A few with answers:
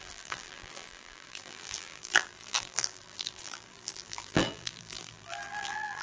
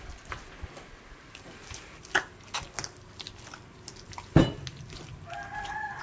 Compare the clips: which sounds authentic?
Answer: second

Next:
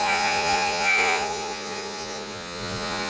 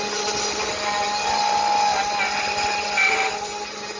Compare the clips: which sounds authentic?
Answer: second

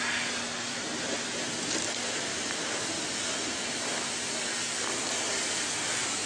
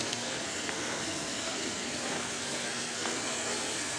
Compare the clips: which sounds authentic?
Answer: first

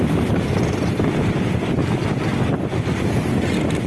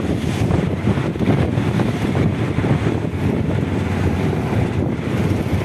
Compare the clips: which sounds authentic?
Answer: first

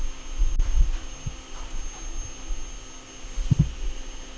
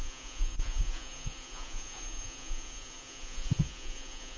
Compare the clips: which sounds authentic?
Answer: first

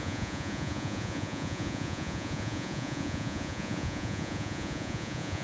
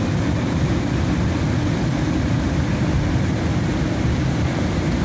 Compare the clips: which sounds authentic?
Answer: second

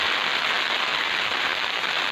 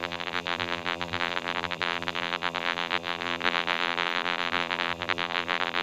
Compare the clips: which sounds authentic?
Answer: first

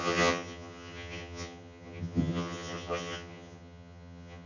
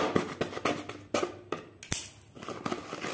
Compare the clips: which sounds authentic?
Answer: second